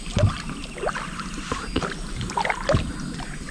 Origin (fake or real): real